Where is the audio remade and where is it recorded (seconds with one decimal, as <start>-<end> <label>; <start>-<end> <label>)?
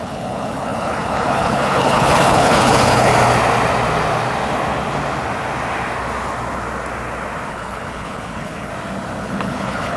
0.0-3.1 remade; 3.1-7.5 recorded; 7.5-8.7 remade; 8.7-9.2 recorded; 9.2-10.0 remade